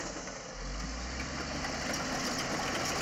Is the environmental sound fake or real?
real